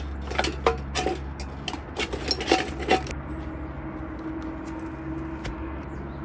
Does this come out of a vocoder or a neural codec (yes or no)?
no